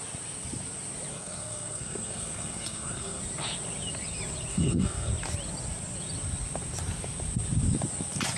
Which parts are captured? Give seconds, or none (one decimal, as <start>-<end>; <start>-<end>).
0.0-1.1; 3.2-4.5; 5.1-8.4